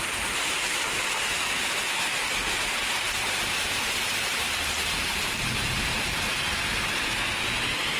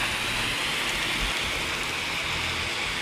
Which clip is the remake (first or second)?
first